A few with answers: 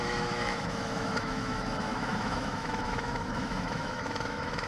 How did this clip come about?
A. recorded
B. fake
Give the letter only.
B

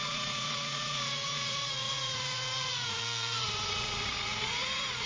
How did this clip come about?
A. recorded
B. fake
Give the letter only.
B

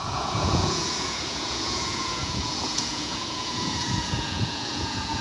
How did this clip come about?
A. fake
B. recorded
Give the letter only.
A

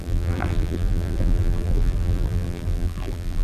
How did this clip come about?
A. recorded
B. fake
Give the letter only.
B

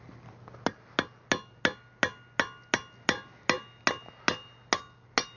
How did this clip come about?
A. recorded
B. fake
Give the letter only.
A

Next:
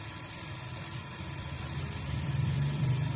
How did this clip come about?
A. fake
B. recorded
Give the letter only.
A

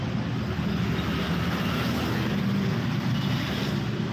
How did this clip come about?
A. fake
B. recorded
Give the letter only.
B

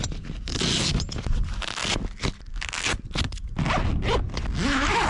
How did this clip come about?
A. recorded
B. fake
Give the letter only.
A